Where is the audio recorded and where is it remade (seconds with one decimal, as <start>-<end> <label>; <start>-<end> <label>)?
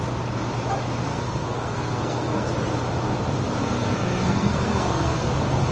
0.0-1.1 recorded; 1.1-2.5 remade; 2.5-3.6 recorded; 3.6-5.3 remade; 5.3-5.7 recorded